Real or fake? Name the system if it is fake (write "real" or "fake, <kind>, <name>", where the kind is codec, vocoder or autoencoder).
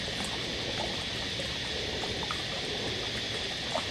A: fake, vocoder, BigVGAN v2